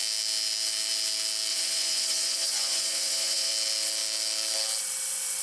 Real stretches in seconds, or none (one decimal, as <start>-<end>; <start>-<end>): 0.0-1.5; 3.5-5.4